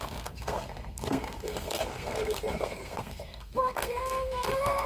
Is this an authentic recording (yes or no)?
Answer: no